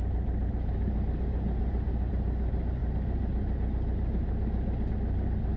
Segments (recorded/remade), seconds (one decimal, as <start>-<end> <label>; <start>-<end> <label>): 0.0-5.6 recorded